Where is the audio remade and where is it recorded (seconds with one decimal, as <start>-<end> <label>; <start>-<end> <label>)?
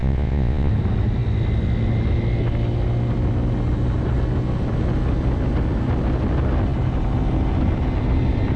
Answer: 0.0-0.7 remade; 0.7-8.6 recorded